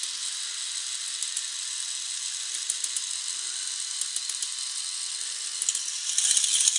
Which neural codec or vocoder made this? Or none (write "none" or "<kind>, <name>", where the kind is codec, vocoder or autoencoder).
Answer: none